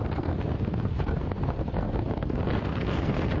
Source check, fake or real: fake